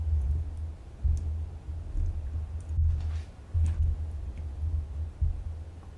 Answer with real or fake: real